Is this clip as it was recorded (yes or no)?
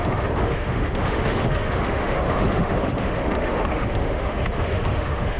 no